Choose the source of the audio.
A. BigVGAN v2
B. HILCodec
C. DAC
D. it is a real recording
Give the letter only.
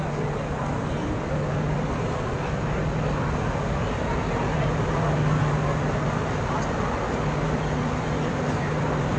D